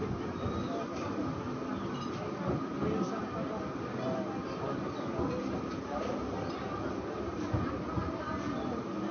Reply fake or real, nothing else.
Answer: real